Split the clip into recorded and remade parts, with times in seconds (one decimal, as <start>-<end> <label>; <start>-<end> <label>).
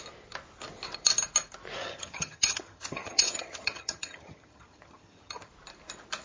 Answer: 0.0-1.8 recorded; 1.8-5.5 remade; 5.5-6.2 recorded